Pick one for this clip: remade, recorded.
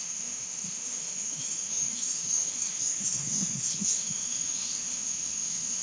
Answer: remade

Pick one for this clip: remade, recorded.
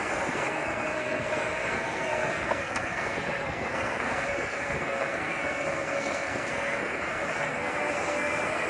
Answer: remade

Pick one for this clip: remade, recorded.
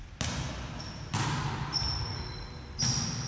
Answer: recorded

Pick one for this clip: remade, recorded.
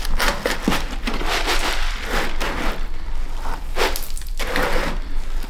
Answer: recorded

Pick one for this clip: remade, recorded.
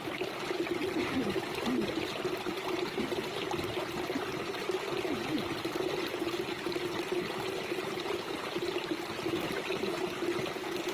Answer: recorded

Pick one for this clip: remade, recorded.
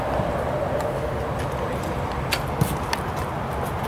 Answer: recorded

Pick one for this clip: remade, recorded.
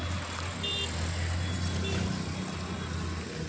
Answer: recorded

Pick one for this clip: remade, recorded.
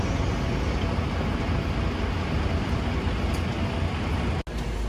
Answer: recorded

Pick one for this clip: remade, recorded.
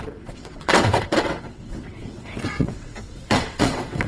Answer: remade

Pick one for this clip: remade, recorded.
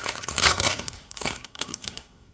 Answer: remade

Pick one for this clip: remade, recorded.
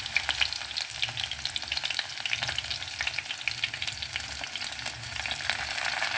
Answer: recorded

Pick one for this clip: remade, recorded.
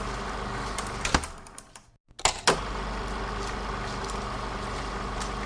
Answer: recorded